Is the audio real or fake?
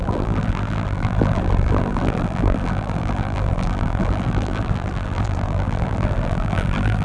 fake